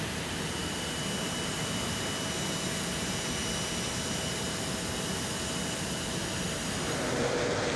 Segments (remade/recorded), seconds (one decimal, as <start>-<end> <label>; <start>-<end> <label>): 0.0-7.8 recorded